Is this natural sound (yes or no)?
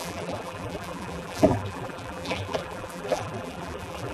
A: no